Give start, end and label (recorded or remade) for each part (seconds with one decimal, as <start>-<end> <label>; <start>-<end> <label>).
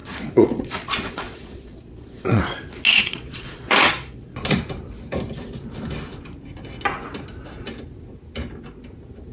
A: 0.0-2.4 remade; 2.4-2.9 recorded; 2.9-4.3 remade; 4.3-9.3 recorded